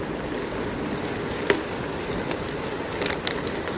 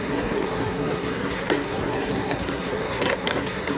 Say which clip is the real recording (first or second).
first